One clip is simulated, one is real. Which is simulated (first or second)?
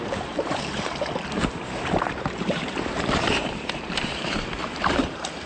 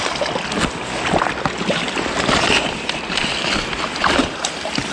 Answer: first